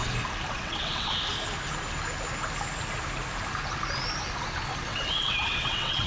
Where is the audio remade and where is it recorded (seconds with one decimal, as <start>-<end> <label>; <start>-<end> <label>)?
0.0-0.5 recorded; 0.5-1.1 remade; 1.1-4.8 recorded; 4.8-6.1 remade

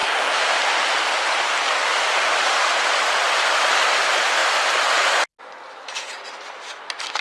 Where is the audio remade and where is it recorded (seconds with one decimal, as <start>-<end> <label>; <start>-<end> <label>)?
0.0-0.5 remade; 0.5-7.2 recorded

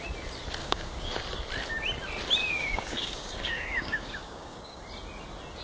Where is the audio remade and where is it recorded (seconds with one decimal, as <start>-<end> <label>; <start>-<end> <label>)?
0.0-0.6 recorded; 0.6-1.1 remade; 1.1-2.4 recorded; 2.4-4.8 remade; 4.8-5.6 recorded

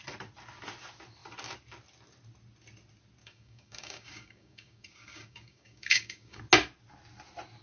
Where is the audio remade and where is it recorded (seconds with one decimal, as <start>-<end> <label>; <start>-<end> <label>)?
0.0-3.2 recorded; 3.2-6.4 remade; 6.4-7.6 recorded

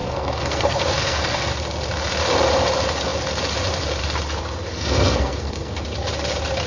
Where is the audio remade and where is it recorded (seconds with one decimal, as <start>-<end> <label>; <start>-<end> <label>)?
0.0-1.5 remade; 1.5-4.7 recorded; 4.7-5.8 remade; 5.8-6.7 recorded

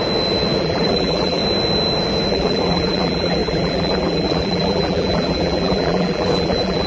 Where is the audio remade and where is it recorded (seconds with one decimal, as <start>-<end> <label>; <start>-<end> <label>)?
0.0-0.6 recorded; 0.6-1.4 remade; 1.4-2.3 recorded; 2.3-6.9 remade

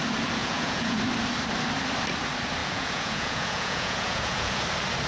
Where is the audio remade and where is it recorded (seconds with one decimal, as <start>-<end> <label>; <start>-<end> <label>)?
0.0-0.4 recorded; 0.4-1.0 remade; 1.0-2.6 recorded; 2.6-4.6 remade; 4.6-5.1 recorded

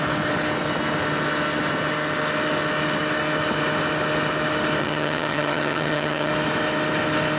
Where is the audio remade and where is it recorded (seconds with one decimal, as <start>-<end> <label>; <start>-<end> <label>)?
0.0-4.8 recorded; 4.8-6.3 remade; 6.3-7.4 recorded